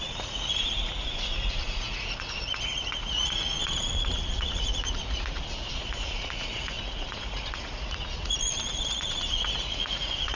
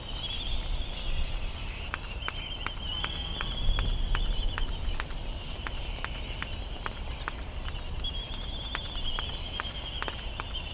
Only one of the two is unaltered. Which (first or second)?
second